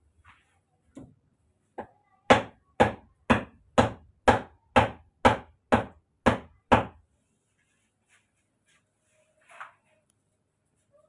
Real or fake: real